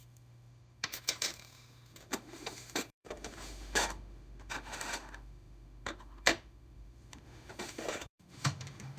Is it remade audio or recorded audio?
remade